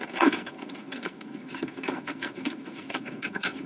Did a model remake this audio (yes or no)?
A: yes